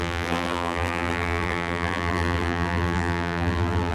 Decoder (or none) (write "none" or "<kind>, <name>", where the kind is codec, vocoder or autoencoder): vocoder, BigVGAN v2